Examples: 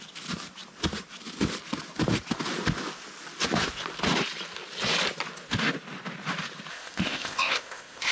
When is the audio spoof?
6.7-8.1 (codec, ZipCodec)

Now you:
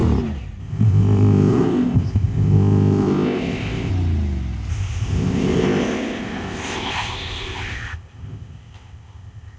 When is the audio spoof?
0.6-3.9 (codec, ZipCodec); 4.7-9.6

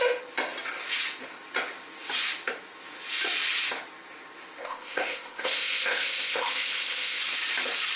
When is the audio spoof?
4.6-7.2 (codec, ZipCodec)